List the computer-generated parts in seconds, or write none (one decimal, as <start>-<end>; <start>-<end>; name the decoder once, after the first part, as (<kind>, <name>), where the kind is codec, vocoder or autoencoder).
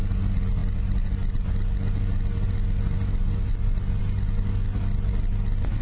none